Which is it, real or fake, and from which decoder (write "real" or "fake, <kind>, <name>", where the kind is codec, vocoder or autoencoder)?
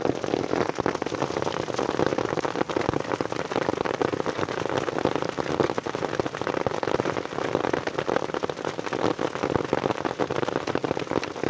real